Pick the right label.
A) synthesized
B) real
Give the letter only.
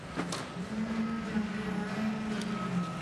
B